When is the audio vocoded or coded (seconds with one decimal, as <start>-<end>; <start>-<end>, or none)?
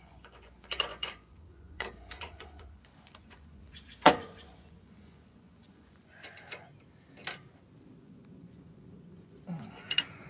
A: 0.0-6.7; 8.0-10.3